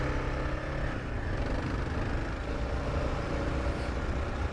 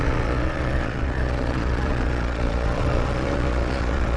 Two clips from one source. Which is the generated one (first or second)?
second